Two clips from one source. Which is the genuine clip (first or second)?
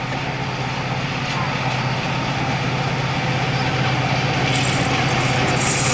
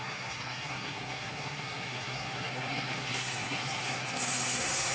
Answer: first